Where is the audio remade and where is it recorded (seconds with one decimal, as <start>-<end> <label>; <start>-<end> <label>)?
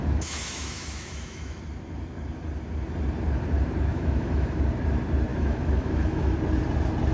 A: 0.0-1.6 remade; 1.6-3.9 recorded; 3.9-4.6 remade; 4.6-5.3 recorded; 5.3-6.3 remade; 6.3-7.1 recorded